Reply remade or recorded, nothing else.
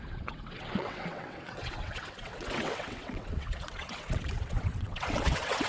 remade